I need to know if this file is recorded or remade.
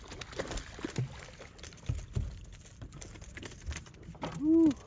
recorded